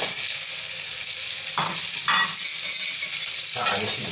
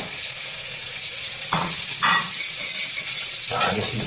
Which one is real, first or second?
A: first